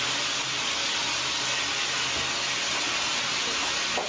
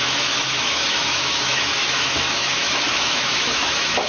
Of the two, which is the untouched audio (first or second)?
first